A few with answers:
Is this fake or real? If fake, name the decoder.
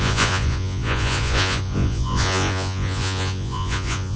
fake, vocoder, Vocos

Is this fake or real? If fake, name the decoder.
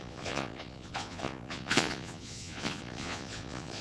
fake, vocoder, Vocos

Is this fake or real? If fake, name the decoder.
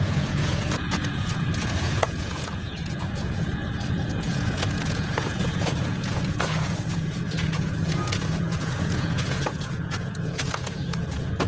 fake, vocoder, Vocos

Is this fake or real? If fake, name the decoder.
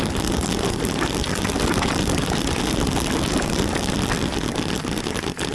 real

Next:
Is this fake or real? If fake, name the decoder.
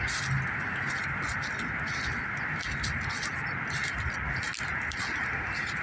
real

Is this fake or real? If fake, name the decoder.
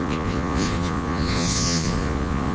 fake, vocoder, Vocos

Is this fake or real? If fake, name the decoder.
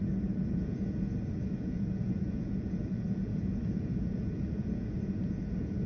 fake, vocoder, Vocos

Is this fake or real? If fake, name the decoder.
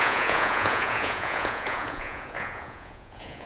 fake, vocoder, Vocos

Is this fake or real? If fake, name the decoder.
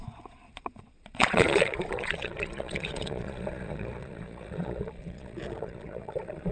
fake, vocoder, Vocos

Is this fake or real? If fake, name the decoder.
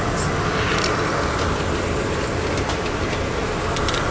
real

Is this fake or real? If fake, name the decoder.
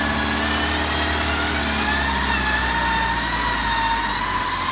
real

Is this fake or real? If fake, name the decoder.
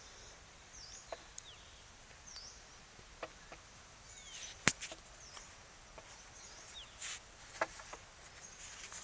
real